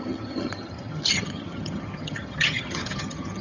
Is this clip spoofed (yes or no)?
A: yes